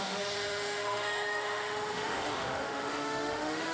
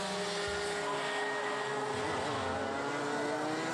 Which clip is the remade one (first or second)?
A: first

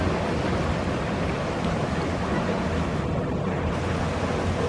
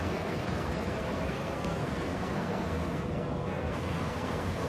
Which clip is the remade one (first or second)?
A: second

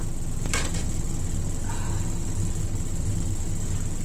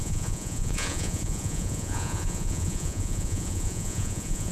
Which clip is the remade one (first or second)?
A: second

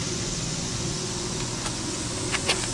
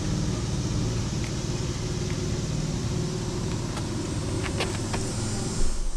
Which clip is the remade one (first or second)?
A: first